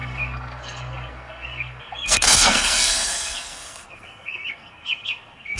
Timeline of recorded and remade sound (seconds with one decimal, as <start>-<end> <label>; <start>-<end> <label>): 0.0-5.6 remade